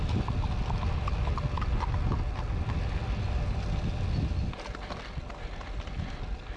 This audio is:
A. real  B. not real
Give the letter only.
A